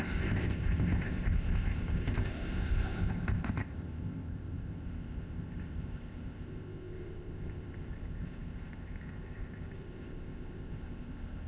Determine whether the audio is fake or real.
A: fake